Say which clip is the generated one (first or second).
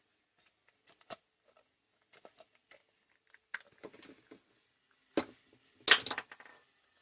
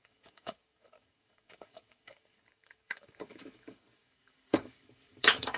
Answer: second